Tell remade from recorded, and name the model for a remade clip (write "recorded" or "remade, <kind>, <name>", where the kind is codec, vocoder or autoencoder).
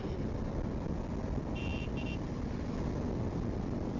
recorded